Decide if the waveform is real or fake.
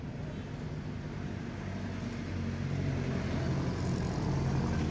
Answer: real